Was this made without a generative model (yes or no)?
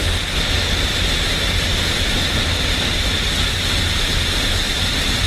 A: yes